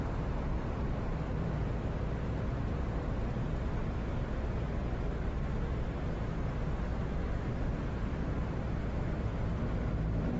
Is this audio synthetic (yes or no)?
yes